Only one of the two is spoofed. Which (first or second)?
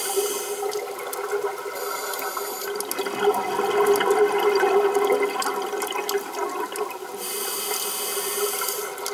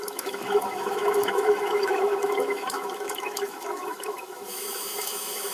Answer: second